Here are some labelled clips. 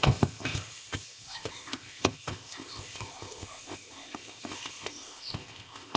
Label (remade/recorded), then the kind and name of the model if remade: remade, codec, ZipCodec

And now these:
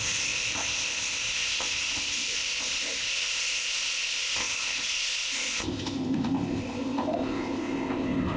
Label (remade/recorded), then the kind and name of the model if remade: remade, codec, ZipCodec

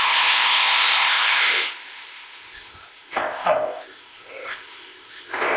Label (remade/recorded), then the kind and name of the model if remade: remade, codec, ZipCodec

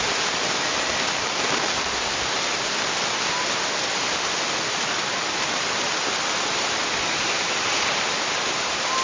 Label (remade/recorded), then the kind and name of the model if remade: recorded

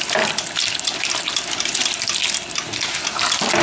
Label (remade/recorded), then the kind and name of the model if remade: recorded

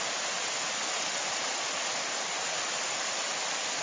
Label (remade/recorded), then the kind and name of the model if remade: recorded